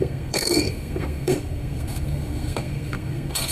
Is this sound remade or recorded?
remade